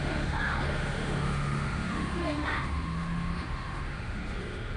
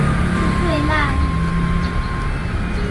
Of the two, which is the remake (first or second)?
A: first